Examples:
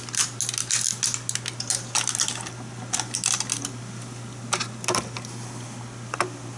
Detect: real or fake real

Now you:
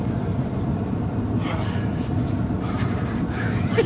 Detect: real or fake real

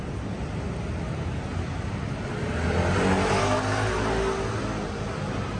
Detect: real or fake real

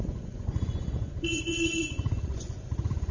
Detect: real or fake fake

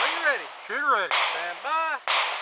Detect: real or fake real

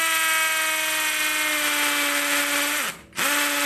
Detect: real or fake real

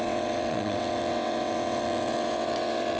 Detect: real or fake fake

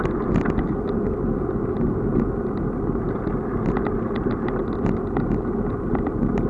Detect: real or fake real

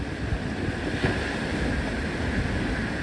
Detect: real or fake real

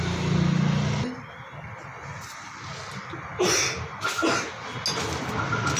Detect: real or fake real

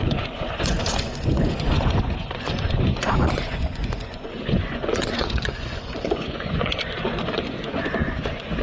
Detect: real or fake fake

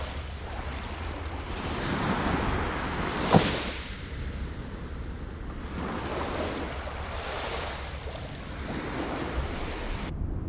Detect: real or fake real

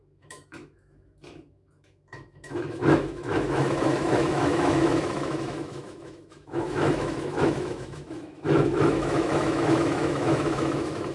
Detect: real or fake fake